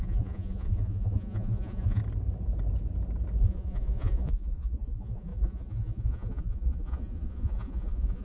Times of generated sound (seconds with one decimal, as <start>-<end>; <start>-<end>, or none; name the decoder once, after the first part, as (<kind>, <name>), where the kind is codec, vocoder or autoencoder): 0.0-2.0 (vocoder, Vocos); 3.4-8.2